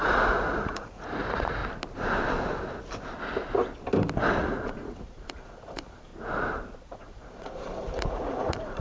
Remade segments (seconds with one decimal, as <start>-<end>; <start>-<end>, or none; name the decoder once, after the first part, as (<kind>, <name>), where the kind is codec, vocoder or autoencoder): 0.0-1.6 (vocoder, Vocos); 4.4-6.1; 6.9-8.8

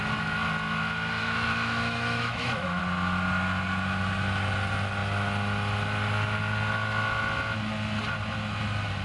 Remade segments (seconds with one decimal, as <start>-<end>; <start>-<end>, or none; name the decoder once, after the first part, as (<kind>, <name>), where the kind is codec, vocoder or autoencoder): 1.2-2.8 (autoencoder, DAC-VAE)

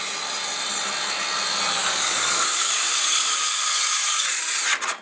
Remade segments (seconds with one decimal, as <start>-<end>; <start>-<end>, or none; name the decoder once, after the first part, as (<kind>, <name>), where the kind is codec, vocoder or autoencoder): 1.8-4.3 (codec, DAC)

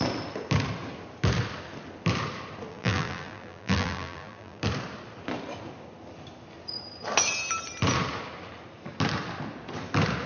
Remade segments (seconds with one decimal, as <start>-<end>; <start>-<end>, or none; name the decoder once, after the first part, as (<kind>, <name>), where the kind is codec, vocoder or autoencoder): 2.7-4.6 (vocoder, BigVGAN v2)

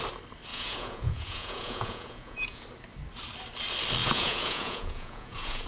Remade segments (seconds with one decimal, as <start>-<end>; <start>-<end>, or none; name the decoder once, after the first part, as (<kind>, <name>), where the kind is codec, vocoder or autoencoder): 0.5-2.6 (vocoder, Vocos); 4.0-5.7

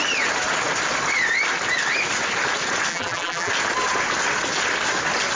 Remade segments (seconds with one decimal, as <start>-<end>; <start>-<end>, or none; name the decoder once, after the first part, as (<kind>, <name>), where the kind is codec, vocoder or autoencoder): 2.9-3.5 (vocoder, BigVGAN v2)

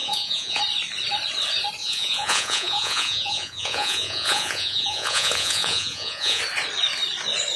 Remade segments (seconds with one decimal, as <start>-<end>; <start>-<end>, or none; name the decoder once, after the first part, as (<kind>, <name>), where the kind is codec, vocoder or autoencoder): 0.0-0.6 (vocoder, Vocos); 1.8-6.4